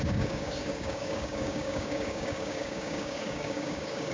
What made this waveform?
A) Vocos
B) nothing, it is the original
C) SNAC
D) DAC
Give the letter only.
D